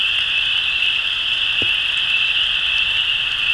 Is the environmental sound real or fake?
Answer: real